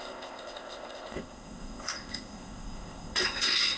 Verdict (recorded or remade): remade